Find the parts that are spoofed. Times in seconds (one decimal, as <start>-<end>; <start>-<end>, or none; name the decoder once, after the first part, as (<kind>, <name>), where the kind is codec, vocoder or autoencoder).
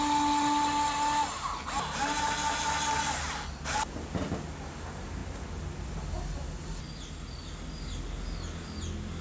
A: none